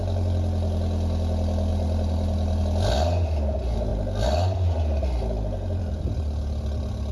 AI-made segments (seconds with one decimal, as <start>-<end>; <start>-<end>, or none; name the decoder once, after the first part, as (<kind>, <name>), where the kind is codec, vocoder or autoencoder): 1.7-2.6 (vocoder, BigVGAN v2)